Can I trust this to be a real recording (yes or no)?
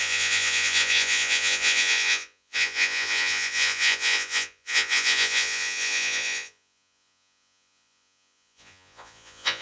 no